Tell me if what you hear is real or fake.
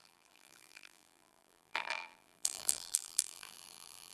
fake